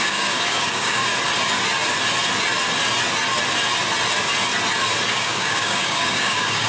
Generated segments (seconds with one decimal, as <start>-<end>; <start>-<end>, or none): 0.0-1.1; 5.1-6.7

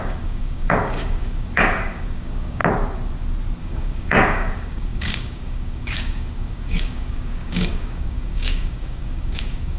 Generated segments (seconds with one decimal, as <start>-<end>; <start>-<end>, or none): 0.0-2.6; 3.6-9.8

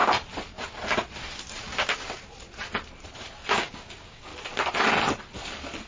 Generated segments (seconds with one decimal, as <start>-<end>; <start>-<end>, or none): 3.5-4.3

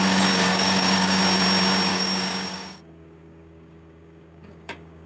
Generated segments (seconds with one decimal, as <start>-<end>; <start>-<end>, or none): 0.5-1.2; 1.9-5.1

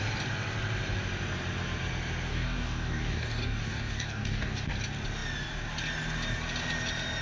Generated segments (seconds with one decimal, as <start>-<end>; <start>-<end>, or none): 2.3-4.7

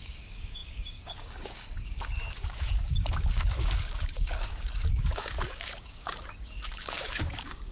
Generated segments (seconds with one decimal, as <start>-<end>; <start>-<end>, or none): 0.0-7.7

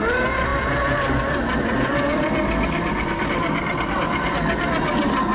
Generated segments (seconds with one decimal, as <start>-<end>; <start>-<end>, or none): none

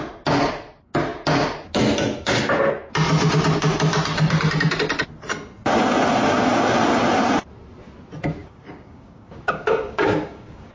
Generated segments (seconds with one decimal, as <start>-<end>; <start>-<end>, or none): 8.4-10.7